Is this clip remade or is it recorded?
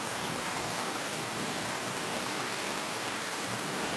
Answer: remade